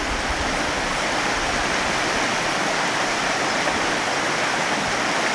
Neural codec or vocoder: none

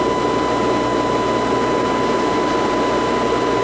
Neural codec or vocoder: none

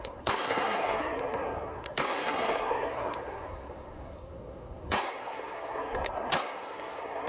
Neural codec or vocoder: codec, SNAC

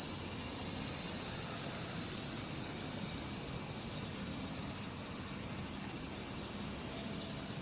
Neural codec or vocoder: none